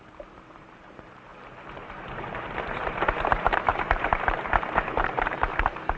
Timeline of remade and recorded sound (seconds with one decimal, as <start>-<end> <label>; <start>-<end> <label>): 0.0-1.3 remade; 1.3-1.8 recorded; 1.8-6.0 remade